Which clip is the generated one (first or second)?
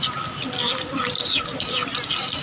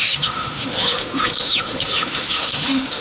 second